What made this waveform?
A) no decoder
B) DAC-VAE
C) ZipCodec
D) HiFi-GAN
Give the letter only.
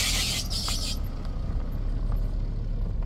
A